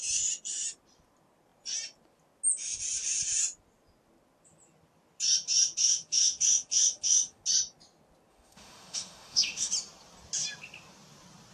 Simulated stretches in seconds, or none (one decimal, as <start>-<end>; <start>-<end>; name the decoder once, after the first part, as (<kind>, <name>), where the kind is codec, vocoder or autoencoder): 5.8-7.4 (autoencoder, DAC-VAE); 8.3-9.7